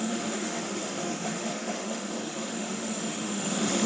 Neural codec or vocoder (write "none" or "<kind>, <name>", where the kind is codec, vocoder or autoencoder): autoencoder, DAC-VAE